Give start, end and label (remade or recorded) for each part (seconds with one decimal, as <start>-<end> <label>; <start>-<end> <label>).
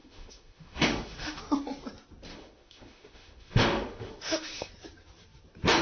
0.0-1.4 remade; 1.4-2.3 recorded; 2.3-4.7 remade; 4.7-5.8 recorded